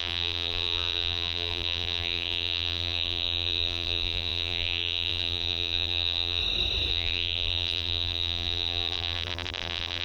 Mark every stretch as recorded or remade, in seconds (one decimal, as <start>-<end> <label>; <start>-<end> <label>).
0.0-6.4 remade; 6.4-6.9 recorded; 6.9-10.0 remade